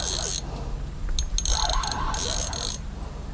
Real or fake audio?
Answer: real